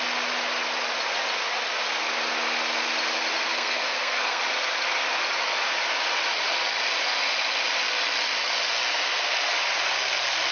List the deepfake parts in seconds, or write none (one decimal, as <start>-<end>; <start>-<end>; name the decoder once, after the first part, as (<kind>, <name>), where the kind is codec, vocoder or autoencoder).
3.5-4.4 (codec, SNAC)